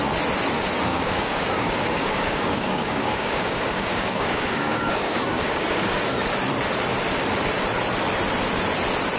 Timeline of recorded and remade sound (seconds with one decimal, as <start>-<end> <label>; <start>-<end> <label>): 0.0-0.9 recorded; 0.9-6.0 remade; 6.0-9.2 recorded